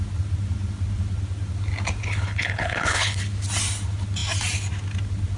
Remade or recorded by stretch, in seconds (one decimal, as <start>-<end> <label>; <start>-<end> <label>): 0.0-2.0 recorded; 2.0-3.2 remade; 3.2-5.4 recorded